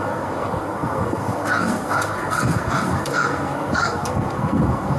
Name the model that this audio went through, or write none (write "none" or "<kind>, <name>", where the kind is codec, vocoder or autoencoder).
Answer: codec, SNAC